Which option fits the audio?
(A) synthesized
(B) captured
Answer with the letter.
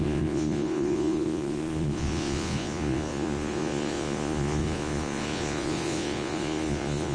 A